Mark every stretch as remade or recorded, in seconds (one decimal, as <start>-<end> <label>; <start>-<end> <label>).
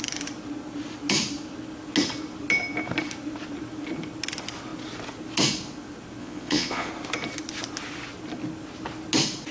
0.0-6.2 recorded; 6.2-6.9 remade; 6.9-9.5 recorded